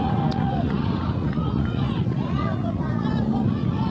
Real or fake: fake